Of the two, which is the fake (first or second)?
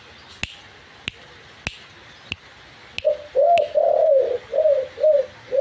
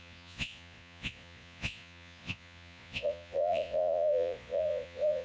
second